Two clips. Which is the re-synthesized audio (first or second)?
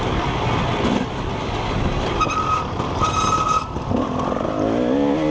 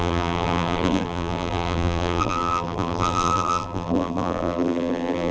second